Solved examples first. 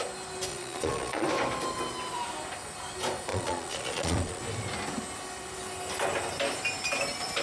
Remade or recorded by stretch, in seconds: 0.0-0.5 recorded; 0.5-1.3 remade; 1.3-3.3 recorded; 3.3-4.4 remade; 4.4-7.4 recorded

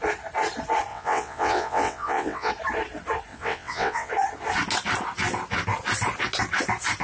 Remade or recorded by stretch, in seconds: 0.0-0.9 recorded; 0.9-2.5 remade; 2.5-3.3 recorded; 3.3-4.1 remade; 4.1-7.0 recorded

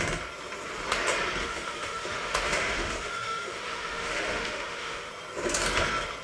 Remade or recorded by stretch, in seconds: 0.0-1.4 recorded; 1.4-5.1 remade; 5.1-6.2 recorded

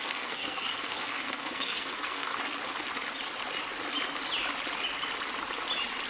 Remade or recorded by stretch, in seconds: 0.0-2.3 remade; 2.3-6.1 recorded

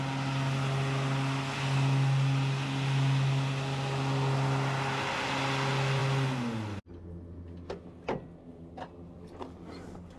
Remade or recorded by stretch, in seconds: 0.0-10.2 recorded